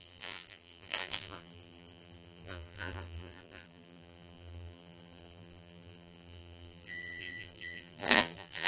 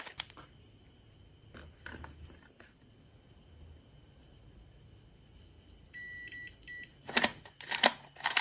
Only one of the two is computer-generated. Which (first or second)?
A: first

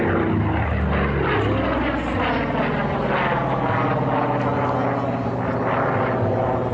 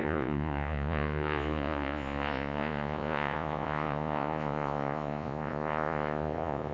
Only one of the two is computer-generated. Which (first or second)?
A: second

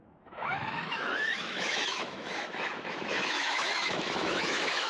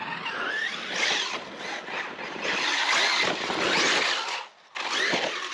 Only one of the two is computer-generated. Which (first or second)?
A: first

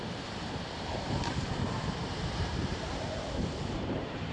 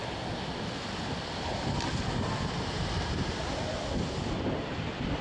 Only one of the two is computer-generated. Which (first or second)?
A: first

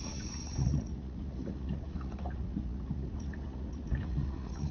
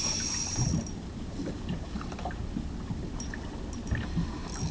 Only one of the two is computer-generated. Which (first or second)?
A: first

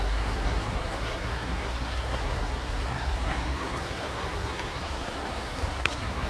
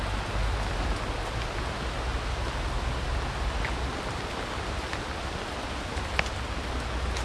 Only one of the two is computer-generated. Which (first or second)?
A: first